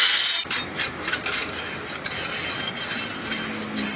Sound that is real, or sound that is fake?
real